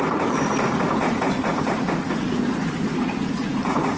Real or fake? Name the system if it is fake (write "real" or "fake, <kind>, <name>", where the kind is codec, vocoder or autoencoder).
fake, vocoder, Vocos